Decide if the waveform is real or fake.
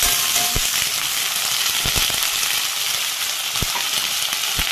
real